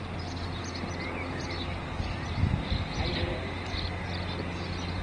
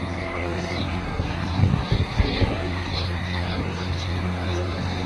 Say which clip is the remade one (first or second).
second